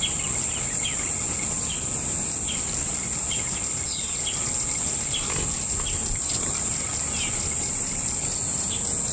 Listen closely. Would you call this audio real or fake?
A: real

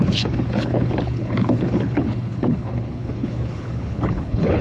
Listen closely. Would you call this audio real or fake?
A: fake